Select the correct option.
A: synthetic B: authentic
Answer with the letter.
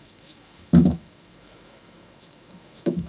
A